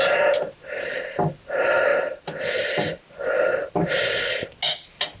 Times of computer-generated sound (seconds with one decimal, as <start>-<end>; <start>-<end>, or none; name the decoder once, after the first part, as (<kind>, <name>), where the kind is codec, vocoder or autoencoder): none